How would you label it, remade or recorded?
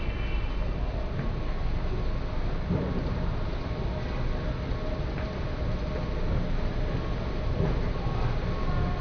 recorded